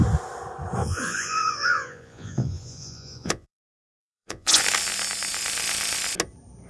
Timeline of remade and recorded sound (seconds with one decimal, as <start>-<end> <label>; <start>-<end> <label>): 0.0-0.8 recorded; 0.8-4.6 remade; 4.6-6.7 recorded